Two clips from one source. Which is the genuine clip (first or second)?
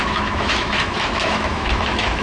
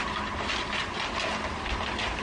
second